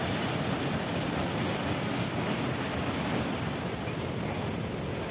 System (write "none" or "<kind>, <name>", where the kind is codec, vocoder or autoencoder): none